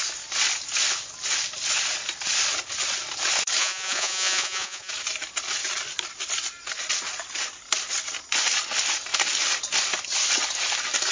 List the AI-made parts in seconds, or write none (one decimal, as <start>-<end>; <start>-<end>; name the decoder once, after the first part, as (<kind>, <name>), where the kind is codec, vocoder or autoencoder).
3.6-4.9 (vocoder, Vocos)